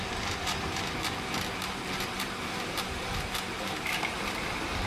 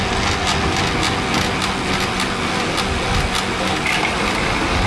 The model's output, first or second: first